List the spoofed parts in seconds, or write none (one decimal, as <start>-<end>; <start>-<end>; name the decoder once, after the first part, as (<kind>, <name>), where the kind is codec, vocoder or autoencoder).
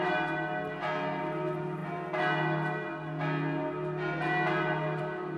none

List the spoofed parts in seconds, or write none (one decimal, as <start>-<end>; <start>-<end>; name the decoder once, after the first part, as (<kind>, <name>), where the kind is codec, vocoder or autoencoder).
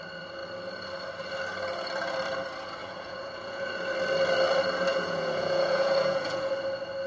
2.8-3.7 (vocoder, Vocos); 4.9-6.5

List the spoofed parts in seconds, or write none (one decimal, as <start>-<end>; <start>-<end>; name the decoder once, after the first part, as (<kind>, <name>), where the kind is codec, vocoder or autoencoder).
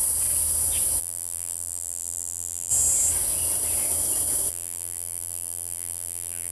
1.0-2.7 (vocoder, BigVGAN v2); 4.5-6.5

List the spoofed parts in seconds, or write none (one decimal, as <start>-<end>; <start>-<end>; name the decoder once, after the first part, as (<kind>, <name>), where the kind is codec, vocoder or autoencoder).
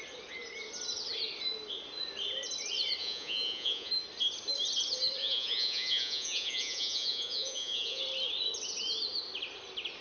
3.0-3.9 (vocoder, Vocos); 5.2-8.0